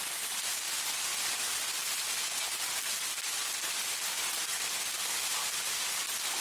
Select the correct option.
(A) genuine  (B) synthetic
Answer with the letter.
A